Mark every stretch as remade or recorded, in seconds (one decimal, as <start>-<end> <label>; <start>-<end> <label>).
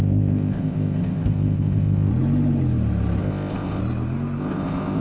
0.0-2.1 remade; 2.1-3.2 recorded; 3.2-3.8 remade; 3.8-4.4 recorded; 4.4-5.0 remade